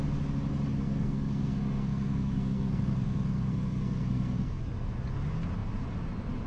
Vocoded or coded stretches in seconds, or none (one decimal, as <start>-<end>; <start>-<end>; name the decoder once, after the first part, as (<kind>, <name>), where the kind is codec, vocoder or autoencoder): 0.7-4.6 (codec, SNAC)